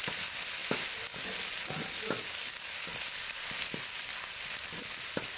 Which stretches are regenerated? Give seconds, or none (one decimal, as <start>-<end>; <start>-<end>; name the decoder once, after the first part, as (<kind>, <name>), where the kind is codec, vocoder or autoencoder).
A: none